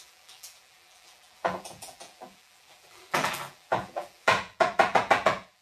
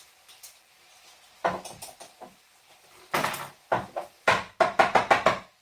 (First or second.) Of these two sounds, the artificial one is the first